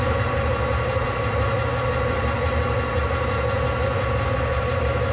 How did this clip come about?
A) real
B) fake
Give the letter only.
A